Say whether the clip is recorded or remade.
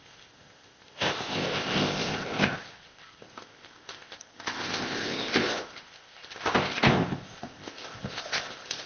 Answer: remade